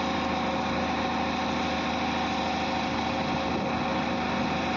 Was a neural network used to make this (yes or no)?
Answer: no